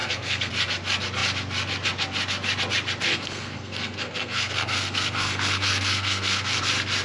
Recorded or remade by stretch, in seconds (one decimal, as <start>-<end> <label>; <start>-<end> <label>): 0.0-0.5 remade; 0.5-3.1 recorded; 3.1-6.6 remade; 6.6-7.0 recorded